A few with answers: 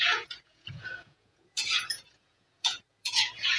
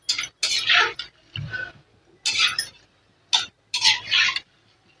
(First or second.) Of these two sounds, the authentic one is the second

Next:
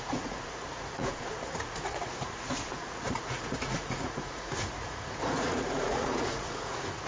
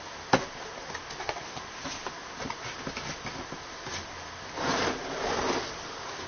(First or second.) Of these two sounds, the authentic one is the second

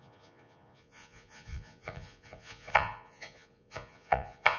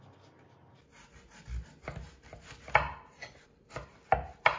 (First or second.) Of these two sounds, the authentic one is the second